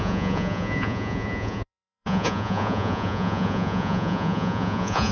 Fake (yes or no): yes